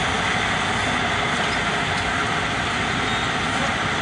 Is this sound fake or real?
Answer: real